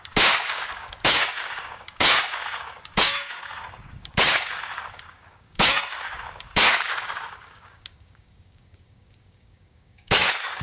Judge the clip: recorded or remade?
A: remade